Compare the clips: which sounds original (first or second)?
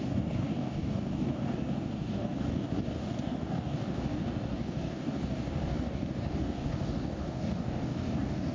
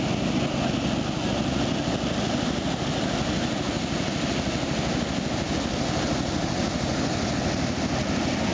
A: second